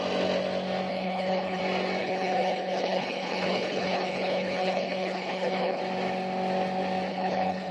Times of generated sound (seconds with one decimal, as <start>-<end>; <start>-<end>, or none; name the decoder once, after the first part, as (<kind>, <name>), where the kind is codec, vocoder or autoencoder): 0.9-1.6 (codec, HILCodec); 2.0-5.8; 7.1-7.7